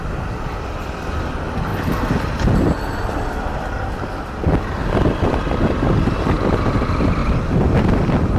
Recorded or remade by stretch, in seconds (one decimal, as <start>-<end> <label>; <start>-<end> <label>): 0.0-7.2 recorded; 7.2-7.8 remade; 7.8-8.4 recorded